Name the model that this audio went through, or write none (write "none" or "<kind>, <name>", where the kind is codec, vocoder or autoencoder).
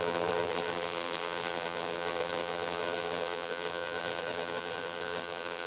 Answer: vocoder, BigVGAN v2